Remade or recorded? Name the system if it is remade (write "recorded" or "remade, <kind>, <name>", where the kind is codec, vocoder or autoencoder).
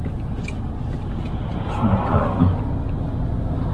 recorded